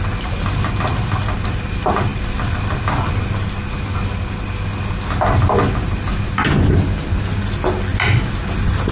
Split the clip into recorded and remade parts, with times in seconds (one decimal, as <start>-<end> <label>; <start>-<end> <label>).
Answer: 0.0-8.9 recorded